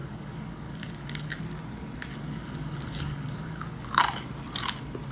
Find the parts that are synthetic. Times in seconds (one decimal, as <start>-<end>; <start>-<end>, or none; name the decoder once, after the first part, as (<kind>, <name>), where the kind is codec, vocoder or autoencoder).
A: 0.0-1.4 (codec, DAC); 2.1-4.0